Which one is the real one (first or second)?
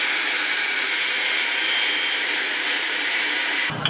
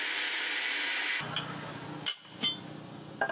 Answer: second